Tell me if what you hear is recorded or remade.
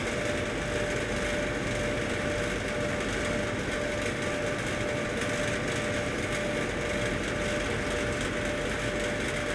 recorded